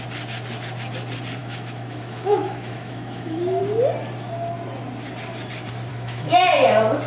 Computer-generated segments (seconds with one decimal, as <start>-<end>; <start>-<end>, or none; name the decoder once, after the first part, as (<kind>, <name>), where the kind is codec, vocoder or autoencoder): 1.4-3.6 (autoencoder, DAC-VAE); 5.9-6.5